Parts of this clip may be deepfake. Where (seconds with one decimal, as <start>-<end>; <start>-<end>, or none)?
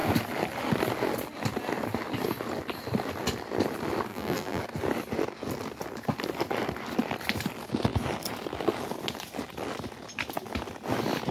4.1-4.6